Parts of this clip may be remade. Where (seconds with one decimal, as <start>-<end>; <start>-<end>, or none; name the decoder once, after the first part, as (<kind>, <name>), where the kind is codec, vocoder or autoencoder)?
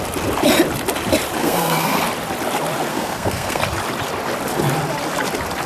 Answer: 1.4-2.0 (codec, SNAC); 2.9-3.6